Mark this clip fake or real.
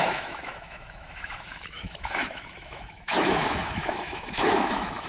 fake